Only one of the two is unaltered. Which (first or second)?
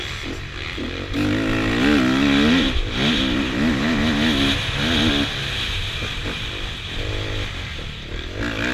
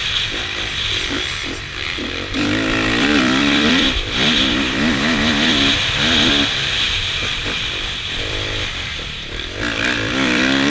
first